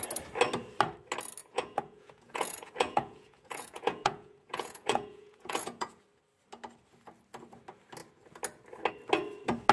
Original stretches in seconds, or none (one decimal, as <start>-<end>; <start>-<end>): 0.0-1.4; 6.0-9.7